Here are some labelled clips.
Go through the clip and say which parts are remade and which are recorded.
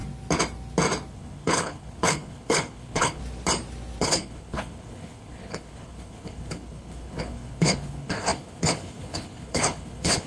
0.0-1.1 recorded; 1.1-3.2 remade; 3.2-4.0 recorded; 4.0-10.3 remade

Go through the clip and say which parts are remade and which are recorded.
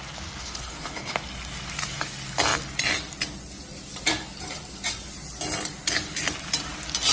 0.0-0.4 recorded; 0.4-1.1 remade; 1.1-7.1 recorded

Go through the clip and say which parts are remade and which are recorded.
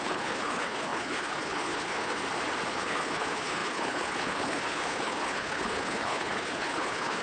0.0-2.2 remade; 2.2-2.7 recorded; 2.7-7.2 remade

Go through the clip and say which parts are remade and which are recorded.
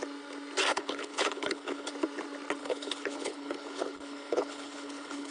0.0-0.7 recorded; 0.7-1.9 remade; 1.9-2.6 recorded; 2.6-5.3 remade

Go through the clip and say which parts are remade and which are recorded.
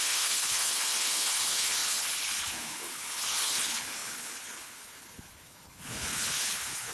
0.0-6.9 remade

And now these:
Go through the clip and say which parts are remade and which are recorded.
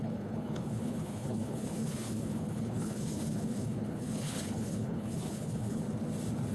0.0-5.8 remade; 5.8-6.5 recorded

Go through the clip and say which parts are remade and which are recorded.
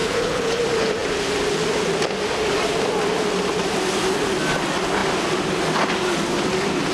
0.0-0.6 remade; 0.6-6.9 recorded